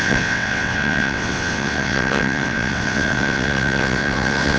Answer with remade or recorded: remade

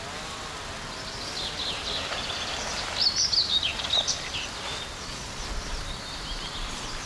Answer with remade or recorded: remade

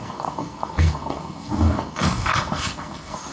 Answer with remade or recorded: remade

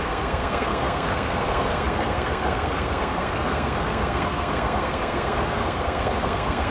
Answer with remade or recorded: remade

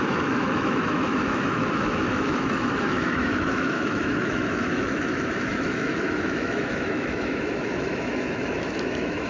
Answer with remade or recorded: remade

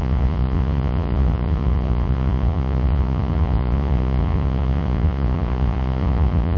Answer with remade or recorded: remade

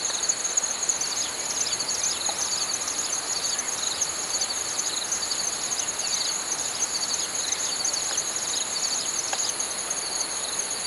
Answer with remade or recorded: recorded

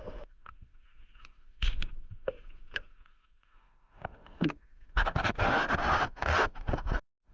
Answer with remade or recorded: remade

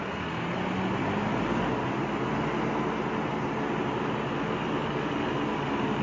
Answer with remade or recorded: recorded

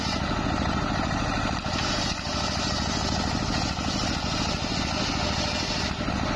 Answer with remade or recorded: recorded